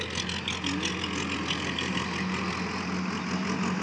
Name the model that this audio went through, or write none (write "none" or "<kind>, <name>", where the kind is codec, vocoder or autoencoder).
none